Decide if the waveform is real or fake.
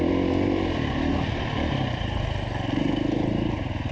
real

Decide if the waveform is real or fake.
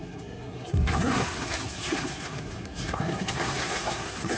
fake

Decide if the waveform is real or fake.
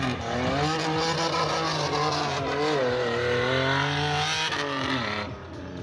real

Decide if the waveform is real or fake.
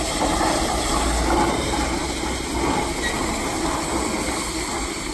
real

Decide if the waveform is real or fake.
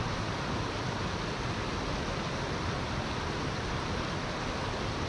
real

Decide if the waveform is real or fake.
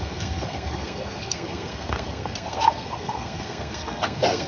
fake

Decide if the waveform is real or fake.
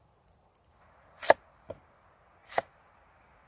real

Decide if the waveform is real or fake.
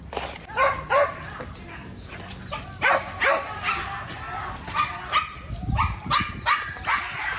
real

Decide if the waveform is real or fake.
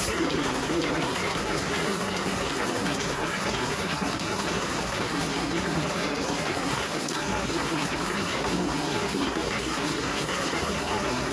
fake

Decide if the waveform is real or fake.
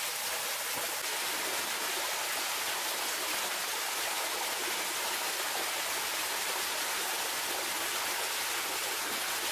real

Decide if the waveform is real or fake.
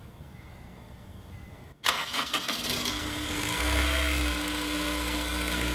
fake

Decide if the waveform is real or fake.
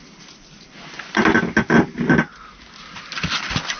real